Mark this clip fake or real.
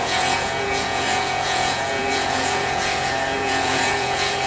fake